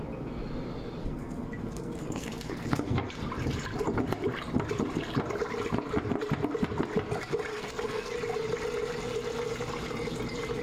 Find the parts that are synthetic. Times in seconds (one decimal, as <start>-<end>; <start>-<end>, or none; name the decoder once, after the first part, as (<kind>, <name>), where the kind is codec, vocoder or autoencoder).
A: 1.0-3.0 (codec, SNAC); 7.5-8.1